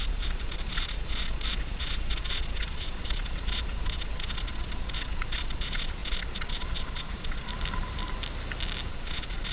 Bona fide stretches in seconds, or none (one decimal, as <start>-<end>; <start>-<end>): 7.5-8.9